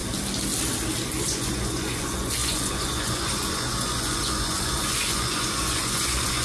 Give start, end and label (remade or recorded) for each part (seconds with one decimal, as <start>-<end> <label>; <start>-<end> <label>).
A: 0.0-1.2 recorded; 1.2-6.4 remade